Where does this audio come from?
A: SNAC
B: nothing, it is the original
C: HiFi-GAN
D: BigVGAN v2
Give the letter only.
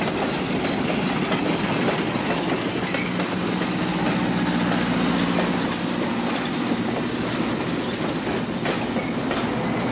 B